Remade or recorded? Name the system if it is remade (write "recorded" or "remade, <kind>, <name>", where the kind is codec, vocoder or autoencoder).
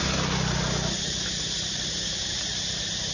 remade, vocoder, BigVGAN v2